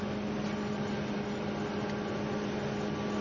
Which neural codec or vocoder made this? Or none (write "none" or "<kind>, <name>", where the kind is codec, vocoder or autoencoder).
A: none